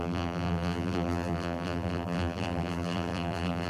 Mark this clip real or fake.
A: fake